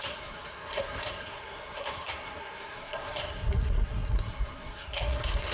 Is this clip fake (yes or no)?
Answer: yes